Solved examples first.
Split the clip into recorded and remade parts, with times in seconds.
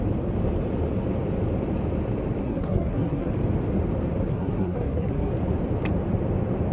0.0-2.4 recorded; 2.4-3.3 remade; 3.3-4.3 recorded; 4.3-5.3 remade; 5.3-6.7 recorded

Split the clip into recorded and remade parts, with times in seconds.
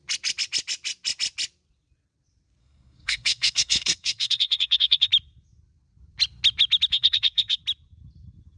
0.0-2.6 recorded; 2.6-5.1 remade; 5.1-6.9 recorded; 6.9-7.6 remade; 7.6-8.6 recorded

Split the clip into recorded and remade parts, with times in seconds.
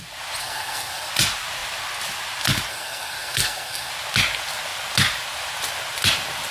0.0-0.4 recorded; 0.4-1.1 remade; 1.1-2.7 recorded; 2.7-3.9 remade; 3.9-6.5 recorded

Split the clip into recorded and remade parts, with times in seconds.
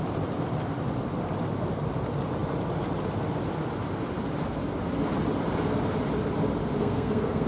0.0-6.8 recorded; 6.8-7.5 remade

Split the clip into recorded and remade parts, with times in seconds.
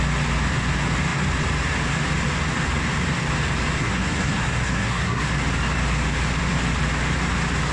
0.0-3.8 recorded; 3.8-5.3 remade; 5.3-7.7 recorded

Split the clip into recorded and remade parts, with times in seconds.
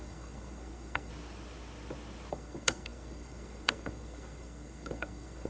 0.0-1.1 remade; 1.1-2.3 recorded; 2.3-5.5 remade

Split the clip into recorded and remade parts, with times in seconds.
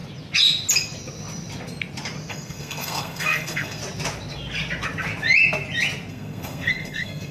0.0-2.3 recorded; 2.3-3.8 remade; 3.8-6.1 recorded; 6.1-7.3 remade